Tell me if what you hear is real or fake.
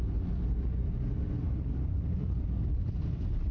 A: real